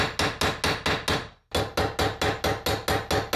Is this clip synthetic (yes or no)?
no